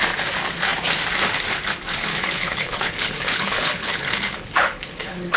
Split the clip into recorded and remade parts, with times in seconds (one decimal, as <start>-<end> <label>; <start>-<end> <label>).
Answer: 0.0-2.1 recorded; 2.1-5.4 remade